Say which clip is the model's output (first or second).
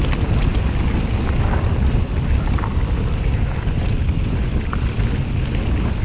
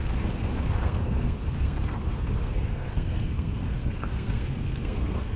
second